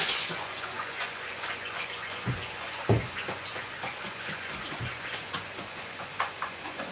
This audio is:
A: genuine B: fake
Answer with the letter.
B